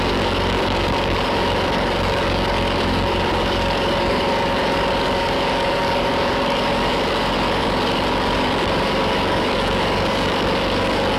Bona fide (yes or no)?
no